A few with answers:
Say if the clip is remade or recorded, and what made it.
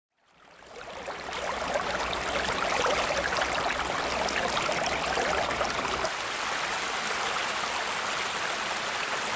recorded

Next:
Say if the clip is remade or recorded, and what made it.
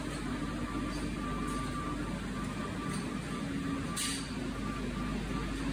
recorded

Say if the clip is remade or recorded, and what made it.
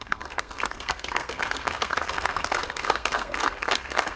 remade, codec, SNAC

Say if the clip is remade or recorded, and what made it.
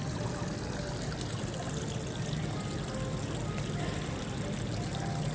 recorded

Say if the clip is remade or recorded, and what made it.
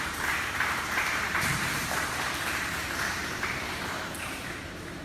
remade, vocoder, BigVGAN v2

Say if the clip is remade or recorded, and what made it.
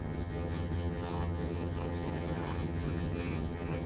remade, vocoder, HiFi-GAN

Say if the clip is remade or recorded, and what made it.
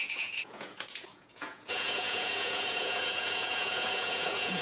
remade, vocoder, Vocos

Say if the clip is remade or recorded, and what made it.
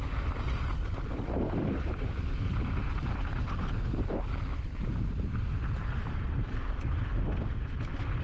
recorded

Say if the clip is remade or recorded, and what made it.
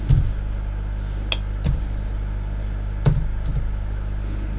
recorded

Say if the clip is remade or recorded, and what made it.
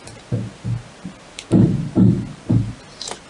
recorded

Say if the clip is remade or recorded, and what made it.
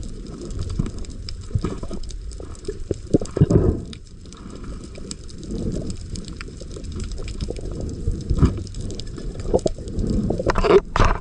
remade, vocoder, BigVGAN v2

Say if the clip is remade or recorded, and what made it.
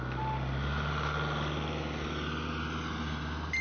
recorded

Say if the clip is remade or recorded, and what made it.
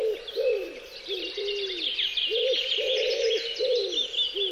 recorded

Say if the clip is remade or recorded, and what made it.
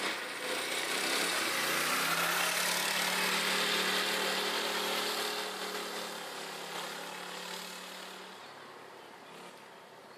recorded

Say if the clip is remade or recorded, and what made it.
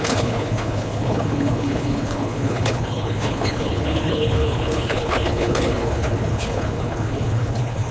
remade, codec, HILCodec